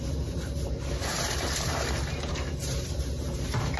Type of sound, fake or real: fake